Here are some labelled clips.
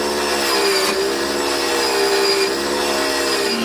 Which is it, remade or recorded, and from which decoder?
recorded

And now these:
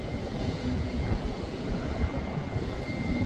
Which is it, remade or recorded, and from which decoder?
remade, vocoder, Vocos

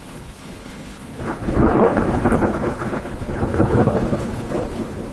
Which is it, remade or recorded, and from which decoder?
remade, codec, HILCodec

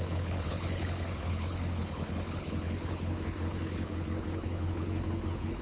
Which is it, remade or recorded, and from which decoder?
remade, codec, HILCodec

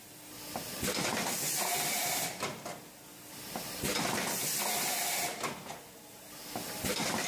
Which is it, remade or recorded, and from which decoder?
recorded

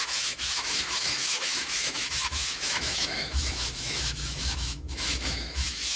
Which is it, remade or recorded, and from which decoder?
remade, autoencoder, DAC-VAE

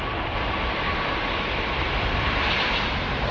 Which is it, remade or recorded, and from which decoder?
recorded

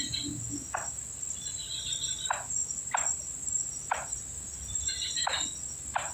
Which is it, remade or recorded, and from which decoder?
recorded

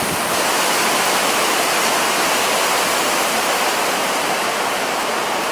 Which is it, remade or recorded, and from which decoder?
recorded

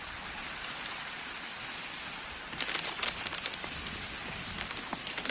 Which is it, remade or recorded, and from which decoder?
recorded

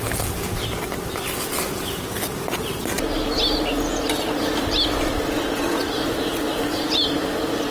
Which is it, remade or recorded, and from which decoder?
recorded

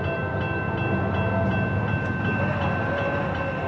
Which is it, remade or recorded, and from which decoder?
recorded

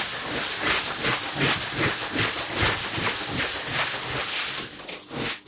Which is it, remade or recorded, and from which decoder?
recorded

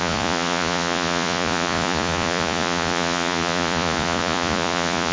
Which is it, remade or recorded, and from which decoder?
remade, vocoder, Vocos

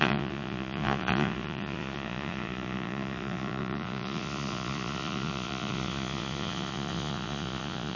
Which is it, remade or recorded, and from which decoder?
remade, vocoder, Vocos